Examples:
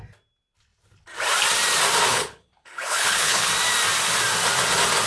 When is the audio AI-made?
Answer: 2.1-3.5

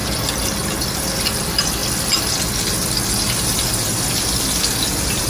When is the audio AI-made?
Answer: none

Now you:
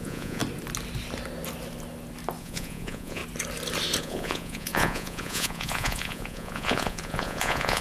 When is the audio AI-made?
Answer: 0.0-0.4; 2.4-3.2; 4.0-7.8